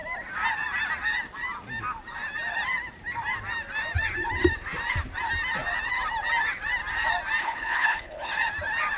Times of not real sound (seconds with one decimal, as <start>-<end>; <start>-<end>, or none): 7.4-8.3